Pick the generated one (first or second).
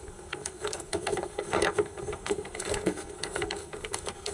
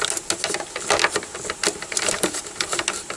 first